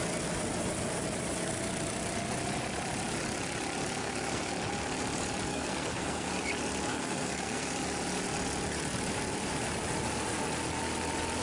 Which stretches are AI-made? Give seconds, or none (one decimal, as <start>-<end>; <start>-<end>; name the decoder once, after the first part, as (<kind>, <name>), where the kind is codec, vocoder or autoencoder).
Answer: 4.0-4.5 (codec, SNAC); 5.5-6.3; 6.9-7.7